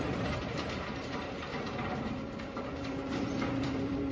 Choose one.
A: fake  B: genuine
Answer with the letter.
A